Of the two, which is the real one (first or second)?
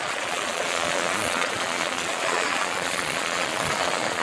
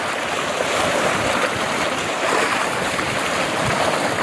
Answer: second